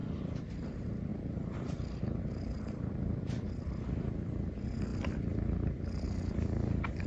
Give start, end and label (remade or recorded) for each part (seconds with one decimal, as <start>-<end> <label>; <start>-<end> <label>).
0.0-7.1 recorded